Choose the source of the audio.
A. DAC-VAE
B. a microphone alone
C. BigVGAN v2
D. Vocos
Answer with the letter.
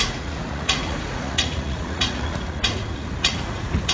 D